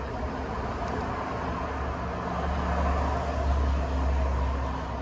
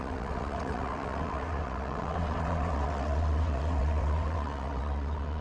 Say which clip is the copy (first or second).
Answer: second